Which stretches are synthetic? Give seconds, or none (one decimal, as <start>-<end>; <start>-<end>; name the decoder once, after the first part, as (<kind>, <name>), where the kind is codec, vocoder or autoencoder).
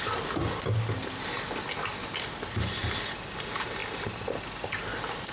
none